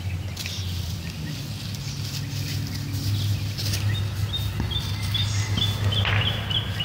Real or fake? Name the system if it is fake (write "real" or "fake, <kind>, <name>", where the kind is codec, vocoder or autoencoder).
real